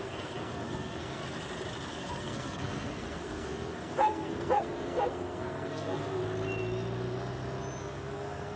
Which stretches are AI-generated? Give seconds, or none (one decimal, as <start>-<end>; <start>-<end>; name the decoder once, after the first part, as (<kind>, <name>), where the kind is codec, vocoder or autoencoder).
0.0-1.2 (codec, SNAC); 1.9-6.2; 7.8-8.6